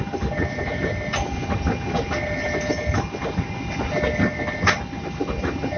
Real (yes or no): yes